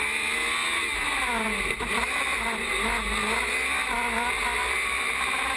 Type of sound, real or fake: real